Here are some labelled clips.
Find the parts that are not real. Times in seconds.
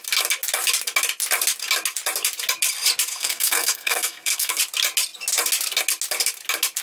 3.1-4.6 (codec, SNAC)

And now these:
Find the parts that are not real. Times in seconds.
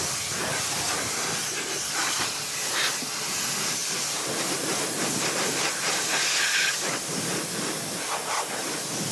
none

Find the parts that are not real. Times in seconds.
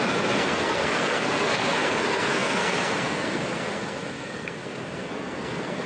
0.0-5.9 (codec, SNAC)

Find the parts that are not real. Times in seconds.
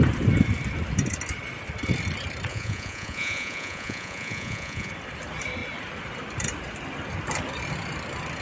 2.5-4.9 (vocoder, Vocos)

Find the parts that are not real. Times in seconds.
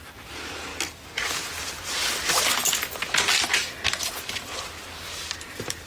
0.0-0.7 (vocoder, BigVGAN v2); 4.2-5.9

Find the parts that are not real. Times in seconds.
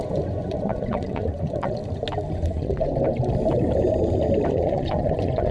0.0-1.8 (vocoder, Vocos); 2.3-2.9; 4.5-5.5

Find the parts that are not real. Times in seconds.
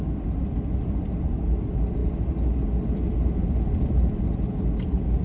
none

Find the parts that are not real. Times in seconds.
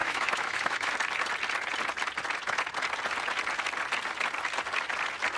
0.0-0.9 (autoencoder, DAC-VAE)